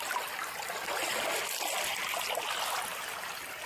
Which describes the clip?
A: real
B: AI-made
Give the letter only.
A